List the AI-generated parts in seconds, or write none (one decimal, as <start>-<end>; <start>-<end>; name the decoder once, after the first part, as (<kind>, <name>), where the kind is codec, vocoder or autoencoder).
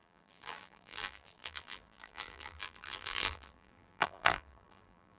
0.0-5.2 (vocoder, BigVGAN v2)